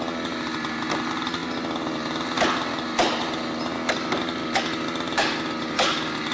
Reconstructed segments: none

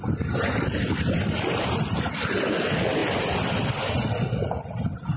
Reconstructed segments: none

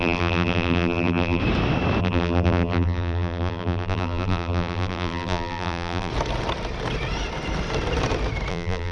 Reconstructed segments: 0.0-1.4 (vocoder, BigVGAN v2); 2.0-6.1; 8.5-8.9

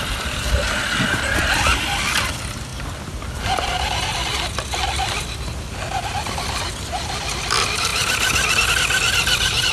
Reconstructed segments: none

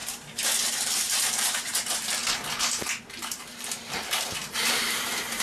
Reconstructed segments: 0.7-2.2 (vocoder, BigVGAN v2); 3.0-5.4

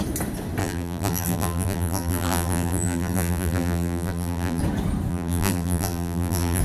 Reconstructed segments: 0.6-4.6 (vocoder, BigVGAN v2); 5.1-6.6

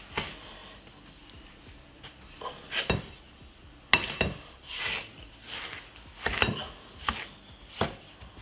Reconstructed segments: 0.6-2.8 (vocoder, BigVGAN v2)